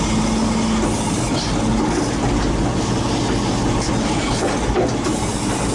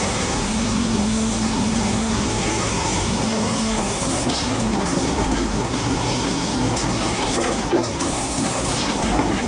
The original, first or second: first